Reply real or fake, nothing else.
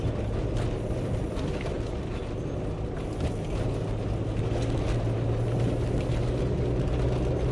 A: real